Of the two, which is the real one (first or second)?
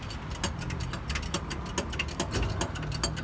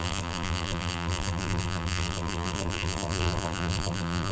first